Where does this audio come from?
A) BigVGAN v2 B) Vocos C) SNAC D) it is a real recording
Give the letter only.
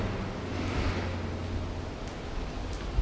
D